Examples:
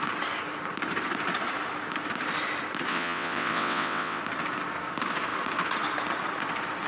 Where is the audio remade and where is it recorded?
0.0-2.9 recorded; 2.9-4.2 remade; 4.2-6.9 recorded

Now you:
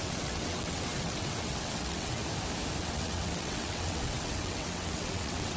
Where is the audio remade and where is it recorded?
0.0-2.2 remade; 2.2-2.8 recorded; 2.8-5.6 remade